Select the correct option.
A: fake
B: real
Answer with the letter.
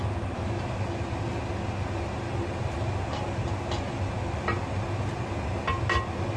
B